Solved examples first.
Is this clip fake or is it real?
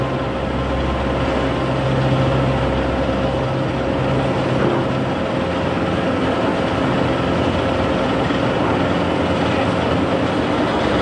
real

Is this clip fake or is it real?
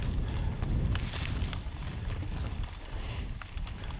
real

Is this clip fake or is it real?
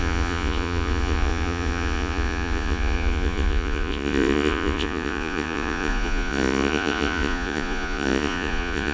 fake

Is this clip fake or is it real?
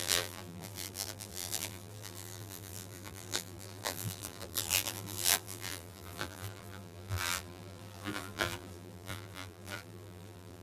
fake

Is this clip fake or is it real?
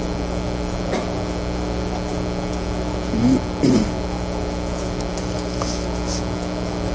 real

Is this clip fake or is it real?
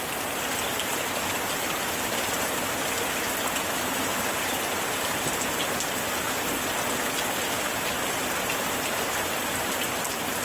real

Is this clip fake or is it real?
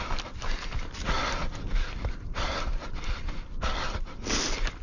real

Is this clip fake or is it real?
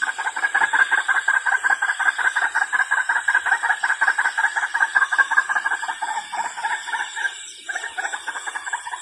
real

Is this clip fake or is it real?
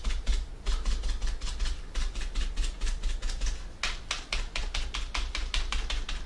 real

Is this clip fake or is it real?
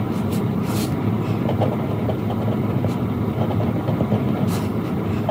real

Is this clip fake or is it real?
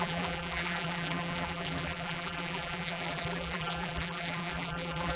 fake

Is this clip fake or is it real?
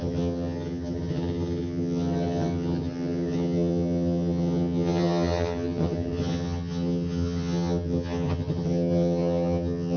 fake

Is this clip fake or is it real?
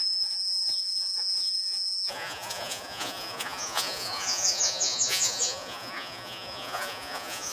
fake